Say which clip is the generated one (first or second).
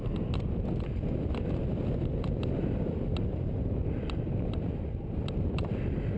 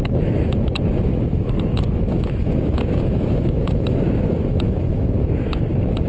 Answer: second